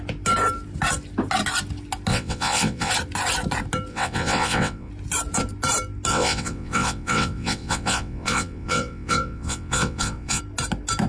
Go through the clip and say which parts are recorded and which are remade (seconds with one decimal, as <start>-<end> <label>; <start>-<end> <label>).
0.0-2.1 recorded; 2.1-2.9 remade; 2.9-3.9 recorded; 3.9-4.9 remade; 4.9-6.1 recorded; 6.1-10.4 remade; 10.4-11.1 recorded

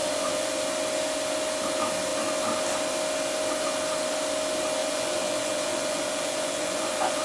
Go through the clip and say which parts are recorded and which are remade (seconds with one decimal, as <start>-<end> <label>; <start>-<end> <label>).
0.0-0.6 remade; 0.6-4.8 recorded; 4.8-7.2 remade

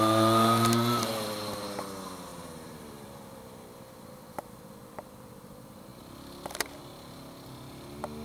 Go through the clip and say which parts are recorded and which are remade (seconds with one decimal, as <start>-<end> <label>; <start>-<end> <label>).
0.0-2.3 recorded; 2.3-3.8 remade; 3.8-8.2 recorded

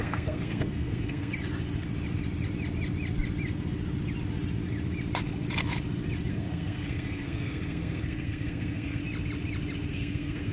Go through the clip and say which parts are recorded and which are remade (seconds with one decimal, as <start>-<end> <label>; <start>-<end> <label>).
0.0-1.3 remade; 1.3-6.3 recorded; 6.3-9.0 remade; 9.0-9.9 recorded; 9.9-10.5 remade

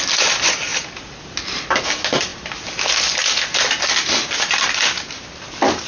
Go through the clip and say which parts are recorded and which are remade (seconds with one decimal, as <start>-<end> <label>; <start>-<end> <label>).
0.0-5.9 recorded

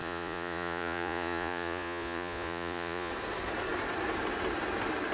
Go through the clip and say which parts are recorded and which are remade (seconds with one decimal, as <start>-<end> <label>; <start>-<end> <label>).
0.0-3.1 remade; 3.1-5.1 recorded